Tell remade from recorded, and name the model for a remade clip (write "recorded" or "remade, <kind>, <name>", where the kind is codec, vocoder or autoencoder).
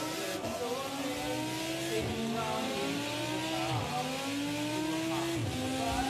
recorded